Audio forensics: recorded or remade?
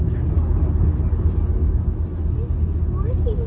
recorded